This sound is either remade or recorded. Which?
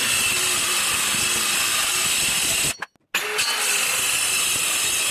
recorded